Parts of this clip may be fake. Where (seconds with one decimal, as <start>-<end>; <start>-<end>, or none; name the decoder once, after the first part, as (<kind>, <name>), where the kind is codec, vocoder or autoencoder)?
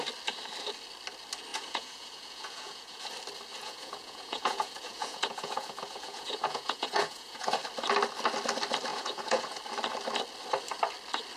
1.5-3.0 (vocoder, Vocos); 3.5-7.6; 8.9-9.6